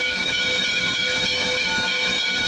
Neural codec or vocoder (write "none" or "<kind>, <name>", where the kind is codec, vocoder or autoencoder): autoencoder, DAC-VAE